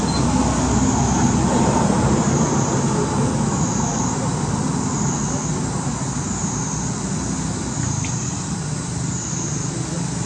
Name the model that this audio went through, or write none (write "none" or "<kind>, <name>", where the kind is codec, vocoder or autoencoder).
none